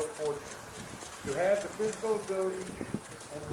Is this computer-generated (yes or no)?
no